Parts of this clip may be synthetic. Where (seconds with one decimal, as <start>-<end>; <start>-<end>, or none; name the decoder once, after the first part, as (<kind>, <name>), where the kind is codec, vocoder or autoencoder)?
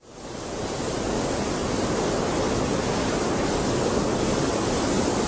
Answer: none